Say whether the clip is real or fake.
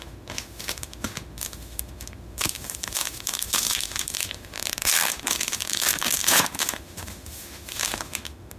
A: fake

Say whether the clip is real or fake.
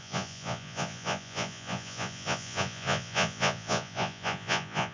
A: fake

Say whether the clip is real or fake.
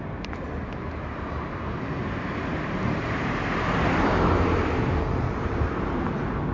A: real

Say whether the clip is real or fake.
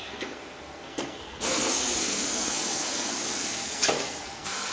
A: fake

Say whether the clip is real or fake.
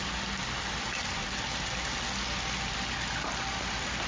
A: real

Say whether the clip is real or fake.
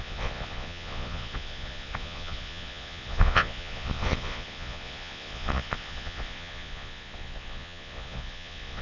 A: fake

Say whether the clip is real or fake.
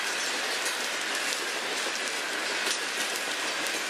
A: real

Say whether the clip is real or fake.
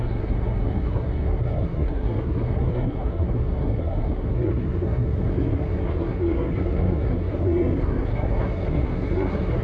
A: fake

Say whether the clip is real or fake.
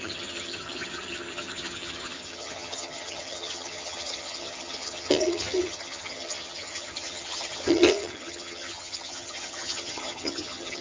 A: fake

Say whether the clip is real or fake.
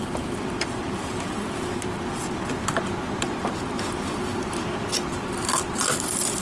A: fake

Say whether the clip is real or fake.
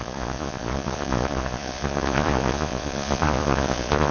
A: fake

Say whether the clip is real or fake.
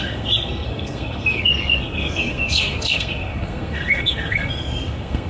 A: fake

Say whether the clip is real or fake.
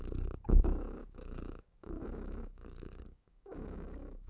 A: fake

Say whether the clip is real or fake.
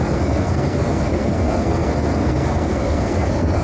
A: fake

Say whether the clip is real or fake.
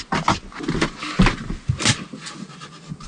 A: real